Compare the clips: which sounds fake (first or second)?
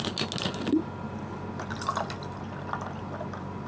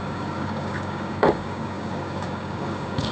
second